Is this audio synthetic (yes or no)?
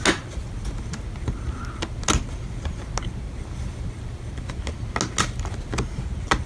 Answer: no